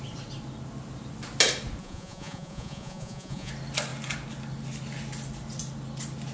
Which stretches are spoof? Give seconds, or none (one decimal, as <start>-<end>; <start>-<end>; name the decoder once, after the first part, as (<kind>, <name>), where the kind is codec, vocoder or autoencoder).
1.8-3.5 (vocoder, Vocos)